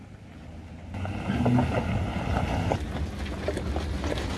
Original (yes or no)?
yes